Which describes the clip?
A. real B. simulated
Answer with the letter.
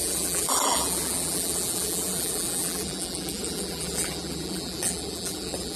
B